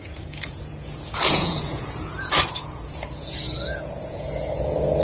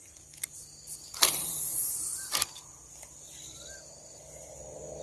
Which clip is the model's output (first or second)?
first